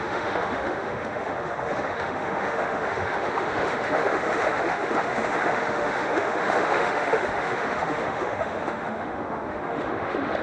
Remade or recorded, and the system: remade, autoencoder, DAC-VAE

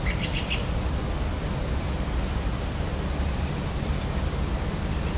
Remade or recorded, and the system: recorded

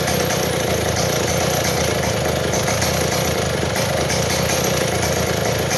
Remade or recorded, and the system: recorded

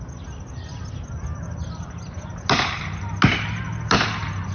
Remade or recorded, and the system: recorded